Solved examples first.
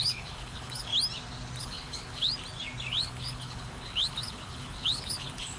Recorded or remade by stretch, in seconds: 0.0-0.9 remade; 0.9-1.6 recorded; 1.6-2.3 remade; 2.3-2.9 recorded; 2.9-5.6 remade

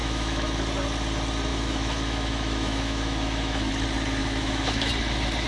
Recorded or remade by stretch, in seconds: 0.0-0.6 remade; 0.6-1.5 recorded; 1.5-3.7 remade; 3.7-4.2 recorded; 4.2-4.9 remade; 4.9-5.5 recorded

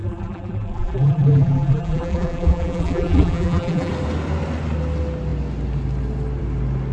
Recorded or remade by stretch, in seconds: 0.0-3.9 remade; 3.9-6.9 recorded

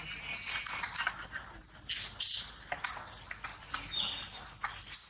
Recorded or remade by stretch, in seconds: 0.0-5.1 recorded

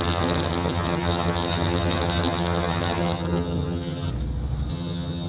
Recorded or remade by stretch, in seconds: 0.0-4.1 remade; 4.1-4.7 recorded; 4.7-5.3 remade